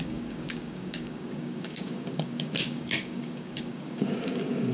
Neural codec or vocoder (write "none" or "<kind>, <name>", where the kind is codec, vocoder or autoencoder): codec, DAC